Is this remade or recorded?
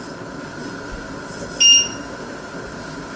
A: recorded